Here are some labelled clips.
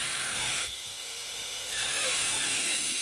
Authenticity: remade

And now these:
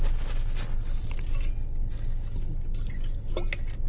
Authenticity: recorded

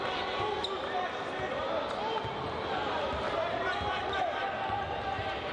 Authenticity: recorded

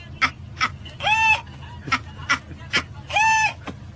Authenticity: recorded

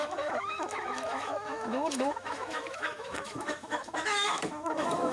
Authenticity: remade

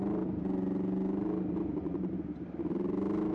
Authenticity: recorded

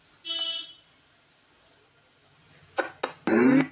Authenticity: recorded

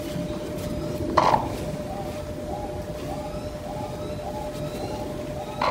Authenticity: recorded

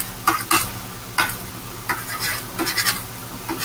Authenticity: recorded